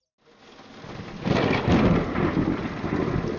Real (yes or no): yes